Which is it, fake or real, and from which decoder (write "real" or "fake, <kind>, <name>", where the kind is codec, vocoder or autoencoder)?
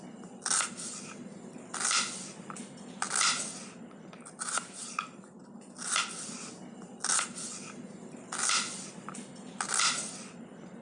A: real